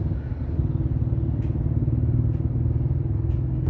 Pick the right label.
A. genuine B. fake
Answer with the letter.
A